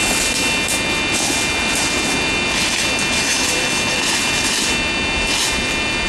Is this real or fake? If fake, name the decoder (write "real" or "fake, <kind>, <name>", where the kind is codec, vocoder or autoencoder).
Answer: real